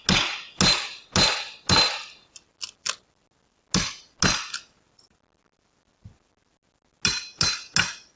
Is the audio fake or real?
real